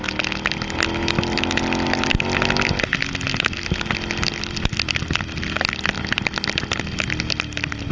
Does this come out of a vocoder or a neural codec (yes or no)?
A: no